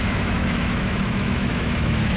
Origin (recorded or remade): remade